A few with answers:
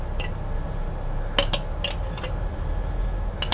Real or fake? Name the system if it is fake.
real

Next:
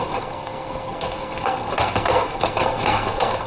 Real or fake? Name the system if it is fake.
fake, codec, SNAC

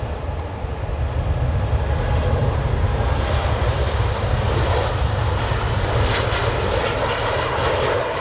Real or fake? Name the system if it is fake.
real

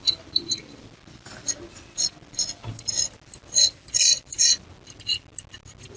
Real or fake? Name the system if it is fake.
real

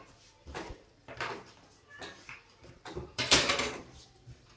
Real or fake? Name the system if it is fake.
fake, vocoder, BigVGAN v2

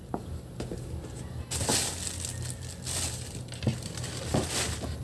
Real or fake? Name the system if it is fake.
real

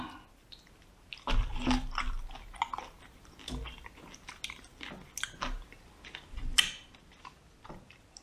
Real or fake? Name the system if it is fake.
real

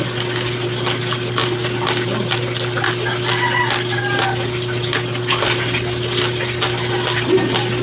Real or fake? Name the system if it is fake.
real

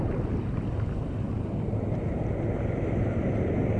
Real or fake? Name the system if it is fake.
real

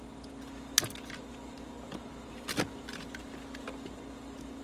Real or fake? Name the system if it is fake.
real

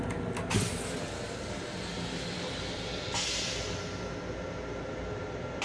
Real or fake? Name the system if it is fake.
real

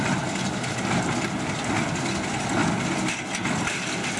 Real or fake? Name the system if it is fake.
real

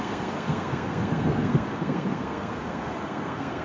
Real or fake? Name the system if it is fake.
fake, codec, SNAC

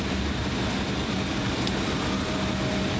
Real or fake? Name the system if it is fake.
real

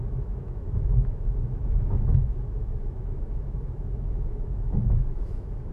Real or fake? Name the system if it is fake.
fake, autoencoder, DAC-VAE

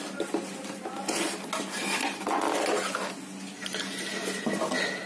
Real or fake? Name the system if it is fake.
real